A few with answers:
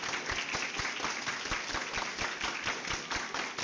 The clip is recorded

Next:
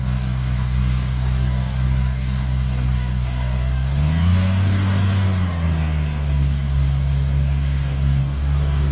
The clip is remade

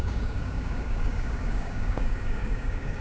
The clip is remade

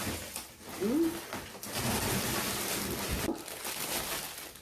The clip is recorded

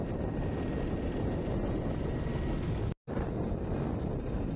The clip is recorded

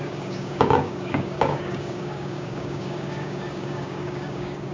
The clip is remade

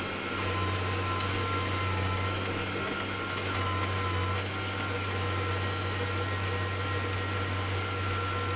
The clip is recorded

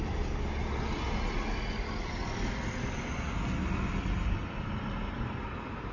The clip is recorded